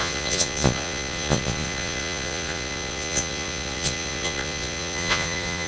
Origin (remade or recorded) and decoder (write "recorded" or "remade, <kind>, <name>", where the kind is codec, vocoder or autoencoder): remade, vocoder, Vocos